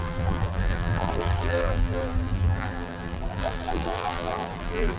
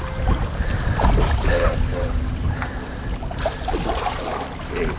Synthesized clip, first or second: first